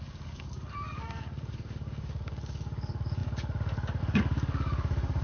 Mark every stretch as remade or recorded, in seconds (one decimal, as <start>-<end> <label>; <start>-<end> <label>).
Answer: 0.0-5.2 remade